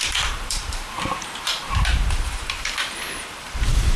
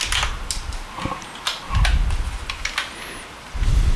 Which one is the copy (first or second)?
first